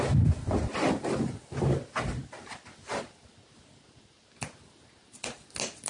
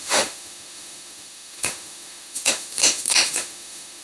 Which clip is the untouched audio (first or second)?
first